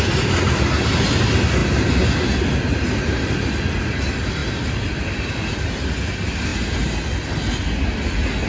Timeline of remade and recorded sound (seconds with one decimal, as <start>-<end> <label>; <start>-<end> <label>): 0.0-8.5 recorded